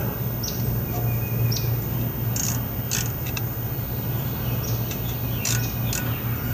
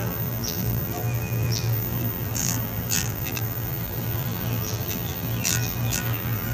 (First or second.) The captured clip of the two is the first